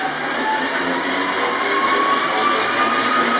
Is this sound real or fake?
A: real